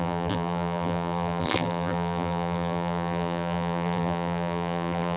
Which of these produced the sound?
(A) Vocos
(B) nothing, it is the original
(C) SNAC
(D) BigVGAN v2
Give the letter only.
D